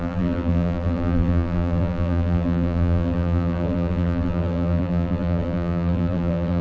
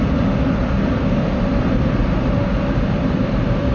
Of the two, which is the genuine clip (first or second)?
second